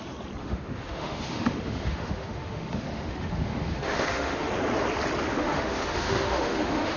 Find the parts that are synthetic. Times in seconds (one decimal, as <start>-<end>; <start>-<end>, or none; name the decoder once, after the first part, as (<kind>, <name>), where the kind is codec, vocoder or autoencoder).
0.4-4.5 (autoencoder, DAC-VAE); 5.3-7.0